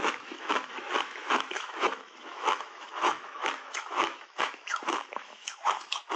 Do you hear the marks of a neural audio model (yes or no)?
yes